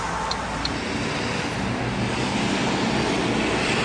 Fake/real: real